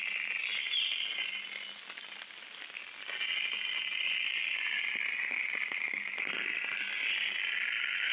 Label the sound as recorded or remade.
recorded